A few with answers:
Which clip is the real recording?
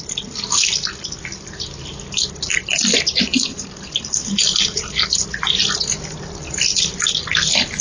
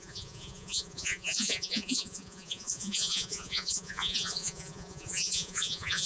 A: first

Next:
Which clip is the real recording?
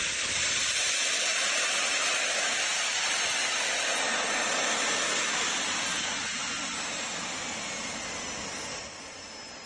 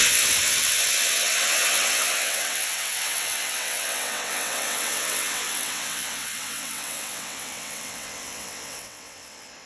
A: first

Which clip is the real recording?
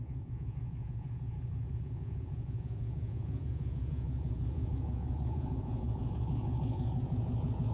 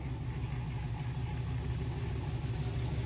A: second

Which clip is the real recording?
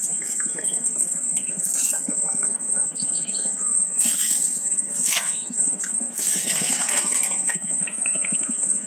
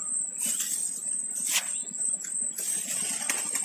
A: second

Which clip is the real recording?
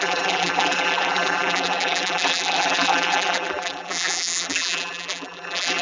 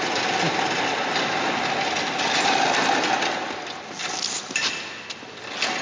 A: second